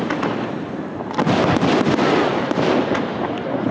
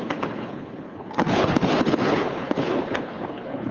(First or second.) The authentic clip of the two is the first